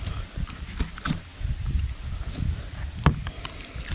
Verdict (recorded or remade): recorded